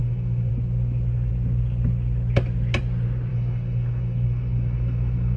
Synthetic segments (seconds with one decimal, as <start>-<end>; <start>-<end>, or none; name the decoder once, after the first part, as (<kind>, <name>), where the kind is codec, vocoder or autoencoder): 0.0-0.5 (autoencoder, DAC-VAE); 3.3-5.4